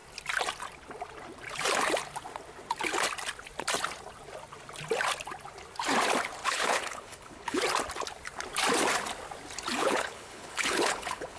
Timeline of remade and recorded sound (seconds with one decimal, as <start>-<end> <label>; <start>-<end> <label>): 0.0-6.4 recorded; 6.4-7.6 remade; 7.6-9.8 recorded; 9.8-11.4 remade